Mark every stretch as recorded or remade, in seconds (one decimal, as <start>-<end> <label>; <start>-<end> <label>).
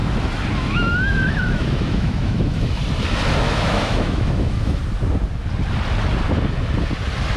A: 0.0-0.6 recorded; 0.6-2.8 remade; 2.8-3.5 recorded; 3.5-4.8 remade; 4.8-7.4 recorded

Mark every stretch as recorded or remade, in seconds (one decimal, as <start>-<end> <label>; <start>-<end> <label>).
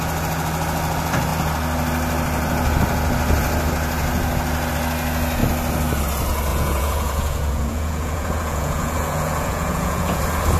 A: 0.0-6.5 recorded; 6.5-10.2 remade; 10.2-10.6 recorded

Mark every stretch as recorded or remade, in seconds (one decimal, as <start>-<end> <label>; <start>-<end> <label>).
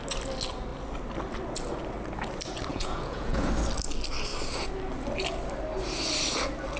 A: 0.0-2.7 recorded; 2.7-3.5 remade; 3.5-6.8 recorded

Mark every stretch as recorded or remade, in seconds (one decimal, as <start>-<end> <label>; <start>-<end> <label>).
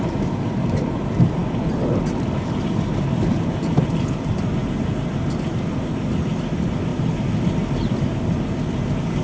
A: 0.0-9.2 recorded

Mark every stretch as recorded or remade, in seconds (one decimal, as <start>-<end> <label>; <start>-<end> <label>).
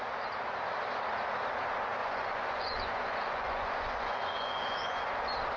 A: 0.0-2.0 recorded; 2.0-5.1 remade; 5.1-5.6 recorded